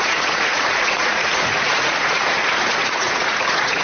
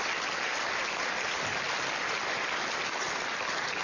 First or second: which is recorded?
second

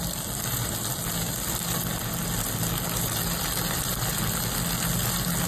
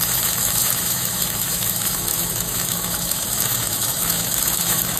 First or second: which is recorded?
first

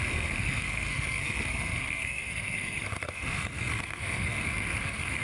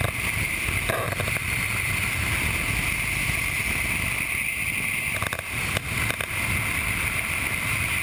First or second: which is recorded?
second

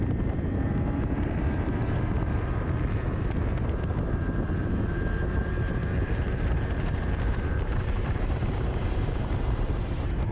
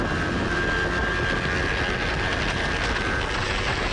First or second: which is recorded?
second